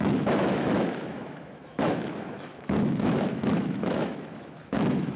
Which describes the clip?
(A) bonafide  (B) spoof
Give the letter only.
B